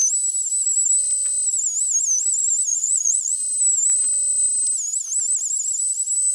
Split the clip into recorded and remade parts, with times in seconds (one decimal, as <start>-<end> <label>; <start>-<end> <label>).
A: 0.0-2.7 recorded; 2.7-3.4 remade; 3.4-6.3 recorded